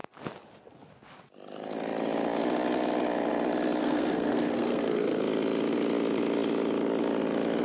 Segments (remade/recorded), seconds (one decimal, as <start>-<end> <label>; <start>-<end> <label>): 0.0-3.8 recorded; 3.8-5.2 remade; 5.2-7.6 recorded